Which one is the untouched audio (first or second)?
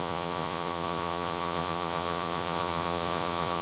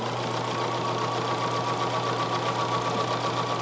second